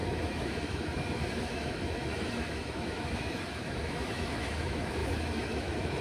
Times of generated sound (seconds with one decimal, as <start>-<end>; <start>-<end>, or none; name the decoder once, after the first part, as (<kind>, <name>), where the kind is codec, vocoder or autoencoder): 0.0-6.0 (autoencoder, DAC-VAE)

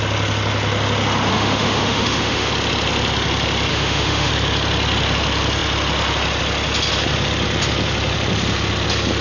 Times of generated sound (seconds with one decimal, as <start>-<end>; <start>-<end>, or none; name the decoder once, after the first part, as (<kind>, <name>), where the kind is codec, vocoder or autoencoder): 1.3-2.5 (autoencoder, DAC-VAE); 3.7-4.3

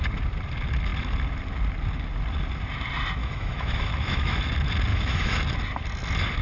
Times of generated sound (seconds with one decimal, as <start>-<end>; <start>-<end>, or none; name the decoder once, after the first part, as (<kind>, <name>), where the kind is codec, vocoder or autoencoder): 3.2-4.4 (autoencoder, DAC-VAE); 4.9-5.4

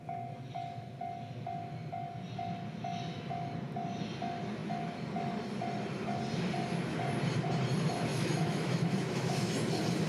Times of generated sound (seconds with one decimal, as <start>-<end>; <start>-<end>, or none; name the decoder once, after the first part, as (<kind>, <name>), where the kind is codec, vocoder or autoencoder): 8.1-9.5 (autoencoder, DAC-VAE)